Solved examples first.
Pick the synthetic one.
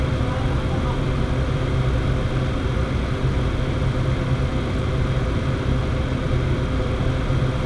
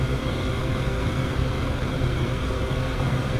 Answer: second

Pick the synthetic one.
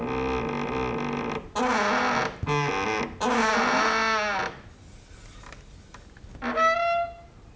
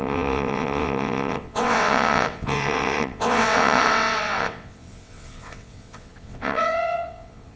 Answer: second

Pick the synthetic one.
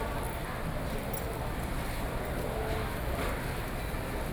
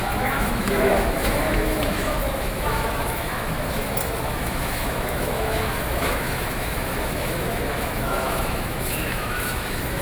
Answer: second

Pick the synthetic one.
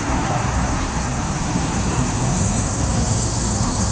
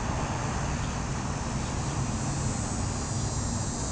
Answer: first